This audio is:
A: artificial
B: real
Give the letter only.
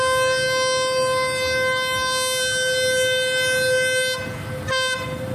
B